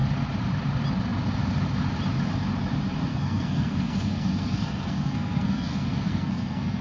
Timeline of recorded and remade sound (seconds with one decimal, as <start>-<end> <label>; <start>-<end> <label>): 0.0-3.1 recorded; 3.1-6.8 remade